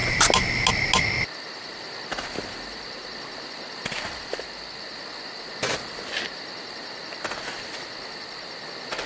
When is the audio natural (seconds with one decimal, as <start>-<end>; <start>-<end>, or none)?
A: 0.0-9.1